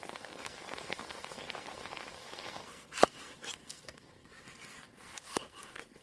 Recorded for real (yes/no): no